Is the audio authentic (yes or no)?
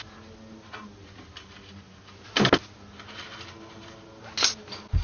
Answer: yes